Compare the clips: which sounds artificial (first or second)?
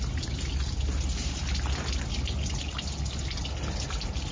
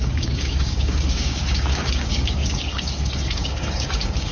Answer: second